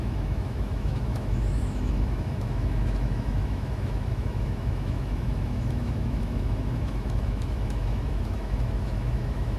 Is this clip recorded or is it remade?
remade